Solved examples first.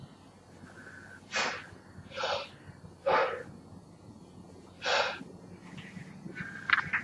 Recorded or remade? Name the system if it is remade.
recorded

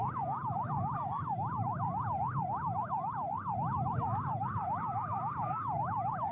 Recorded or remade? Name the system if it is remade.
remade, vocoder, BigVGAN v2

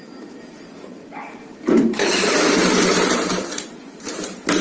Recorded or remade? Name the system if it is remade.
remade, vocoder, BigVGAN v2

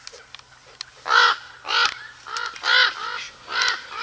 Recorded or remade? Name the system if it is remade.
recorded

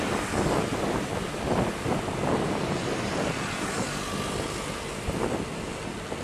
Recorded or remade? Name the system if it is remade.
recorded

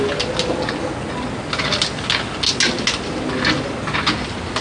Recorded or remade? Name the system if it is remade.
recorded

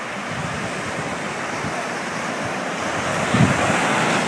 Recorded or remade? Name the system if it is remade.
recorded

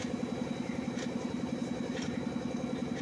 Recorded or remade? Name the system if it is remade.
remade, vocoder, BigVGAN v2